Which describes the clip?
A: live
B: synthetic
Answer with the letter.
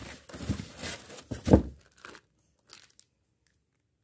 A